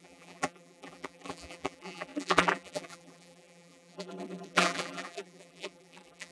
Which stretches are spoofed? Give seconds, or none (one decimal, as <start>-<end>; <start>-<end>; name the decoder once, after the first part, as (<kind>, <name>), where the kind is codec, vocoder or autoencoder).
0.0-6.3 (vocoder, BigVGAN v2)